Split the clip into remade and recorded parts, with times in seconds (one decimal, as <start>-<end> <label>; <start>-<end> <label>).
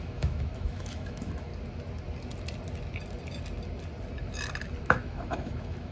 0.0-1.5 remade; 1.5-4.8 recorded; 4.8-5.9 remade